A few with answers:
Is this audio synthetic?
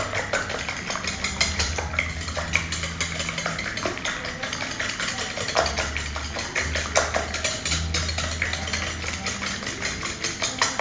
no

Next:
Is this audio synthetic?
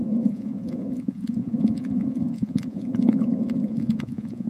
yes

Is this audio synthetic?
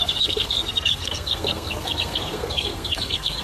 yes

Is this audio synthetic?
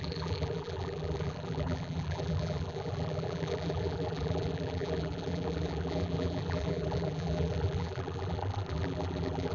yes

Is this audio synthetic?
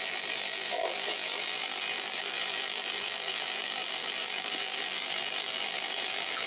yes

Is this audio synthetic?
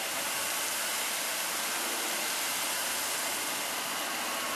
no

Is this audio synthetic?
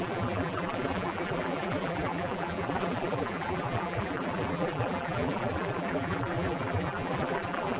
yes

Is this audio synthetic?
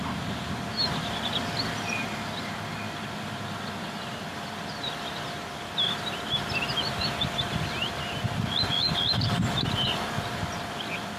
no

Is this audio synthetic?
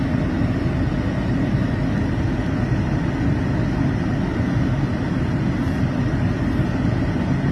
no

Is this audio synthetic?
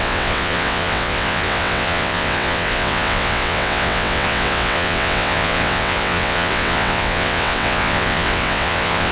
yes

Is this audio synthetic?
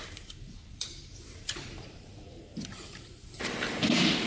yes